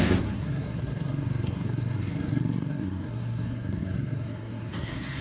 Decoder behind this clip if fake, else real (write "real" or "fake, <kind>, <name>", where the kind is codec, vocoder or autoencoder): fake, codec, SNAC